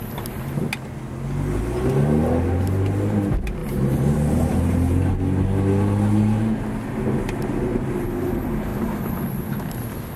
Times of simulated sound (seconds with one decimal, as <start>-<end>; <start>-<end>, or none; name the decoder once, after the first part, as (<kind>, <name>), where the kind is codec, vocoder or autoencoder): 3.6-5.1 (vocoder, BigVGAN v2)